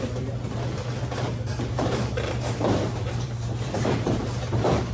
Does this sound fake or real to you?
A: fake